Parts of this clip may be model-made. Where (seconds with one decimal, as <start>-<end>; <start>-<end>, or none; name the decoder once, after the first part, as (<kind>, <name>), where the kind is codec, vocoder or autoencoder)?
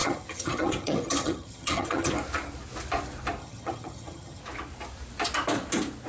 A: 0.0-2.1 (vocoder, HiFi-GAN); 3.4-4.4